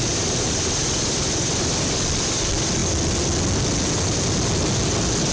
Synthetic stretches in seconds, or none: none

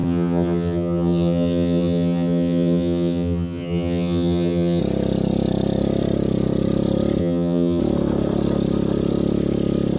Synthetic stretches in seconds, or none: 0.0-4.8 (vocoder, HiFi-GAN); 7.2-7.8

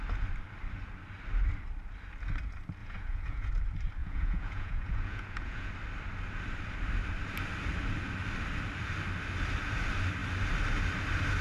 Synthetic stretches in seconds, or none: 2.8-3.5 (vocoder, Vocos); 4.0-5.7

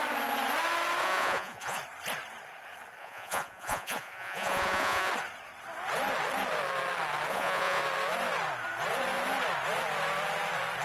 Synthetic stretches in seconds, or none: 1.0-1.8 (vocoder, Vocos); 3.0-5.1; 7.3-7.8

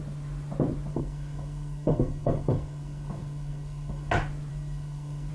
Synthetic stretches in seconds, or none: 0.9-4.1 (codec, SNAC); 4.5-5.3

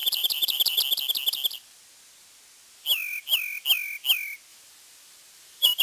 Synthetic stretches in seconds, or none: 0.0-0.8 (vocoder, BigVGAN v2); 4.5-5.8

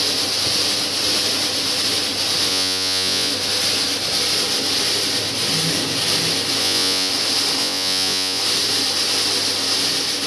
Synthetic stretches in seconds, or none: 2.5-3.3 (vocoder, Vocos); 6.6-7.1; 7.6-8.4